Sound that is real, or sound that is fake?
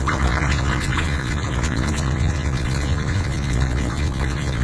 fake